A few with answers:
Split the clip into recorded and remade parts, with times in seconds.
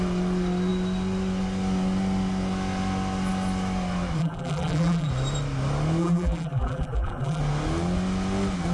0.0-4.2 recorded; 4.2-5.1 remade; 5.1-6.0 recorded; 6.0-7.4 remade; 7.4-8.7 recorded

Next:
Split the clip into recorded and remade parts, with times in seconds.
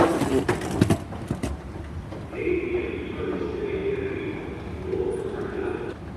0.0-6.2 recorded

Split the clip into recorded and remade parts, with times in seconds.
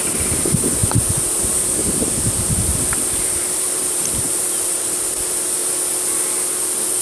0.0-5.6 remade; 5.6-7.0 recorded